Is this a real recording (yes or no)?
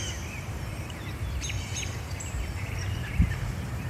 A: no